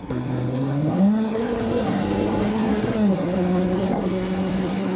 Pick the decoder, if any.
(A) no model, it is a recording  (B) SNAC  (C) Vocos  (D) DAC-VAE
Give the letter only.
B